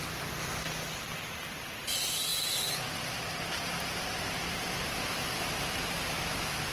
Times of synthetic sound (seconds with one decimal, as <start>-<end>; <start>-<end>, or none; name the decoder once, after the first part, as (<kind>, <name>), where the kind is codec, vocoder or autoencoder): none